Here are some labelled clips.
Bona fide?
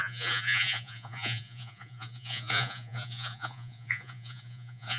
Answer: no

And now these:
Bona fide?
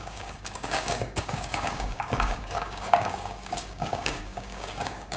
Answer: no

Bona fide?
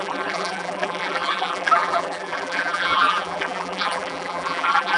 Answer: no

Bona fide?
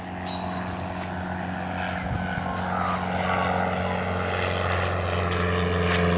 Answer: yes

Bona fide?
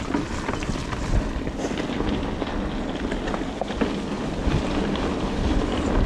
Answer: yes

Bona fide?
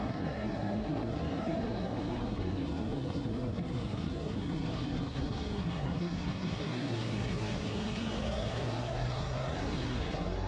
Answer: no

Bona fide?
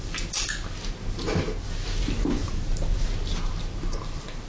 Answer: yes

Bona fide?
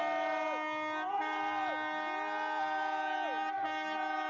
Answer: yes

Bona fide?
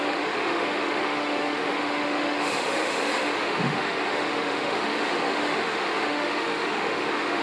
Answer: no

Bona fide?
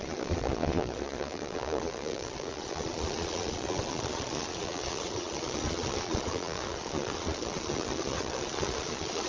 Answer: no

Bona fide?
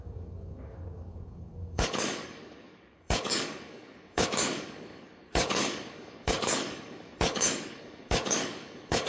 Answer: no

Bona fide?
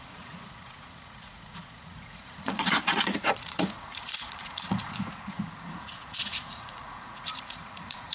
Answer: no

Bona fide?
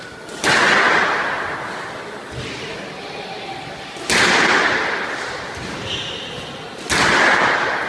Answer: yes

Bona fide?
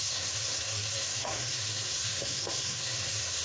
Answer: no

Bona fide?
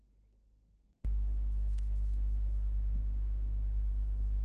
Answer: no